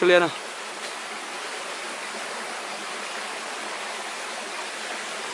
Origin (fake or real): real